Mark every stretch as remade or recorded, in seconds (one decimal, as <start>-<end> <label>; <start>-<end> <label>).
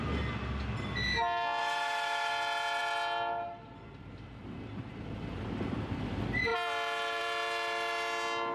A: 0.0-1.6 recorded; 1.6-2.3 remade; 2.3-8.5 recorded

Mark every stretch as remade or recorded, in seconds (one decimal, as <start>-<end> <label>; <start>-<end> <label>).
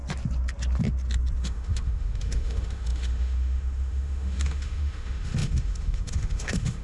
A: 0.0-1.4 recorded; 1.4-6.8 remade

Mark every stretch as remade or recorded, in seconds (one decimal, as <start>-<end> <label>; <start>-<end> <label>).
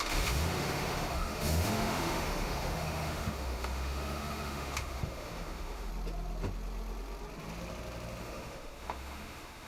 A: 0.0-5.9 remade; 5.9-8.2 recorded; 8.2-9.7 remade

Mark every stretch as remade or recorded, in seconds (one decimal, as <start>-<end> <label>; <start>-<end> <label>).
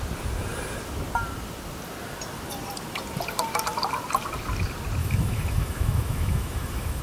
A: 0.0-5.0 recorded; 5.0-7.0 remade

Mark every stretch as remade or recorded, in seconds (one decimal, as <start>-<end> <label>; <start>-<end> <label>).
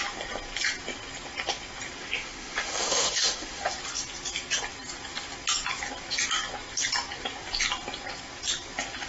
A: 0.0-2.0 recorded; 2.0-3.6 remade; 3.6-9.1 recorded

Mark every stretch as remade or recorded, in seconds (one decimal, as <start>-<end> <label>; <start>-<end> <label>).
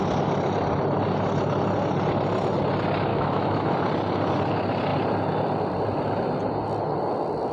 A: 0.0-3.1 recorded; 3.1-3.7 remade; 3.7-7.5 recorded